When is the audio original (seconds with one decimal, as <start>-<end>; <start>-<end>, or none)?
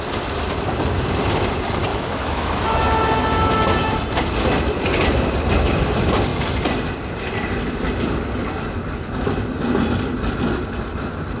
0.0-1.9; 2.6-11.4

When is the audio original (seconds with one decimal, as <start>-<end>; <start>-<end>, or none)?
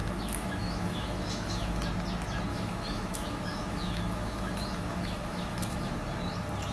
1.8-2.5; 5.9-6.7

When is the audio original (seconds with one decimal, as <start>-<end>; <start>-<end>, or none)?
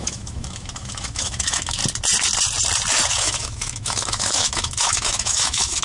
1.8-3.1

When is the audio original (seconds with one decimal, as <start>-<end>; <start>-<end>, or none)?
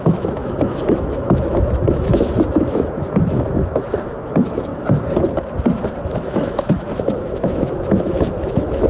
4.7-6.0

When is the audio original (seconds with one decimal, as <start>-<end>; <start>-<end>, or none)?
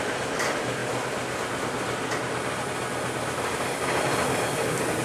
0.0-5.0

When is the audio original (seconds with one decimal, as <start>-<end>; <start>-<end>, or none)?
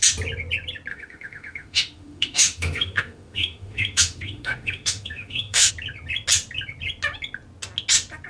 0.0-0.9; 5.7-8.3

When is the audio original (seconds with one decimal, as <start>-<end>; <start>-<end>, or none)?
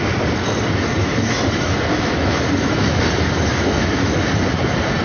0.0-1.0; 3.0-3.5; 4.3-5.0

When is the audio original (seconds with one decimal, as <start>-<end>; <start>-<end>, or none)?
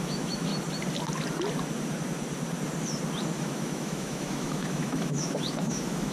0.5-3.3